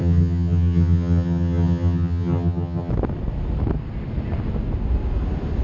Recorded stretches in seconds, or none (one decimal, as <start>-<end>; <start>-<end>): 2.9-5.6